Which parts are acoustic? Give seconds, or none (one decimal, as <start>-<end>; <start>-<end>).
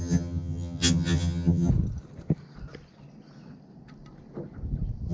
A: 1.7-5.1